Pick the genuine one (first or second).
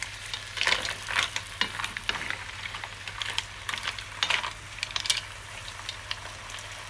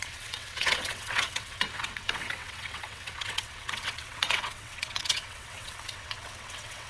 first